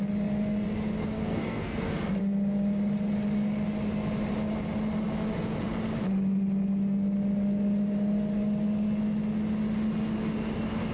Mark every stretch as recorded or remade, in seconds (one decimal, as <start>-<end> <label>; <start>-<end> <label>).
0.0-1.0 recorded; 1.0-2.2 remade; 2.2-10.9 recorded